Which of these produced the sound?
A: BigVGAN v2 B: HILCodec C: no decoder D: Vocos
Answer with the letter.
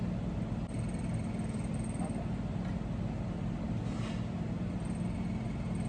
C